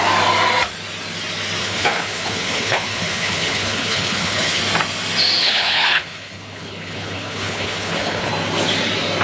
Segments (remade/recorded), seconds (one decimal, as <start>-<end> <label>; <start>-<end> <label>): 0.0-1.6 recorded; 1.6-4.6 remade; 4.6-5.4 recorded; 5.4-8.3 remade; 8.3-9.2 recorded